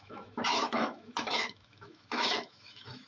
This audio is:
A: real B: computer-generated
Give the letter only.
B